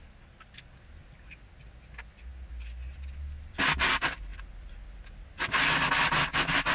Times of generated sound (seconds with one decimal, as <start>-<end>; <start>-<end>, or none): none